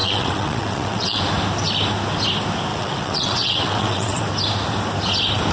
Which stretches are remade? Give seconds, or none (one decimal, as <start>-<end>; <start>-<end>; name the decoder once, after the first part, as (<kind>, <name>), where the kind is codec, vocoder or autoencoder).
0.0-1.2 (vocoder, WaveNeXt); 2.7-4.2